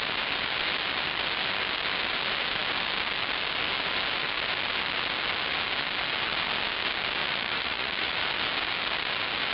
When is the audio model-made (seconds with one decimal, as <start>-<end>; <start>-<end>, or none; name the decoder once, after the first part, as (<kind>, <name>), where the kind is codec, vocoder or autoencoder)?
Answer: 7.2-8.1 (vocoder, Vocos)